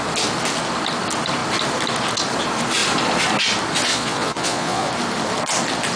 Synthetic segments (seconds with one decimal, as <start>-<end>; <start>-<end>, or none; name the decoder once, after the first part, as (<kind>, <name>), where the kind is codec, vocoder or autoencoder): 3.9-4.9 (vocoder, Vocos)